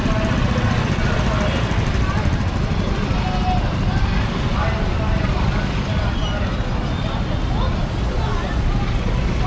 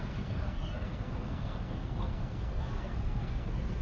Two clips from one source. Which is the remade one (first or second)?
second